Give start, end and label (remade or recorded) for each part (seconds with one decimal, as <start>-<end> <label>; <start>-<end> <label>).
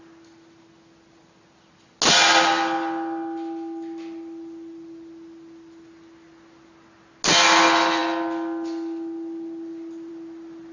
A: 0.0-10.7 recorded